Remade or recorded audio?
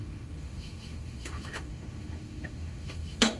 remade